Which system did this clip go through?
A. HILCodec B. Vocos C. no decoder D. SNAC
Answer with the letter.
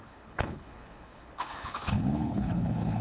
A